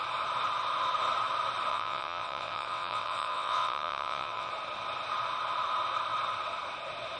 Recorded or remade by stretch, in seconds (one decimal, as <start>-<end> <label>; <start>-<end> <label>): 0.0-1.7 recorded; 1.7-4.5 remade; 4.5-7.2 recorded